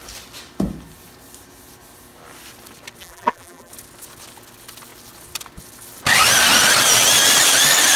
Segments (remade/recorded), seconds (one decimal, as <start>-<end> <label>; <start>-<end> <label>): 0.0-3.0 recorded; 3.0-3.7 remade; 3.7-8.0 recorded